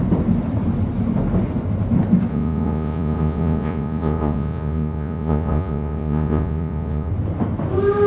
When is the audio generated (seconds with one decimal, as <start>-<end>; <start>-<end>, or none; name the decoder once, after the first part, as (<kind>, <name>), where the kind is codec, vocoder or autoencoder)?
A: 2.3-7.1 (vocoder, Vocos)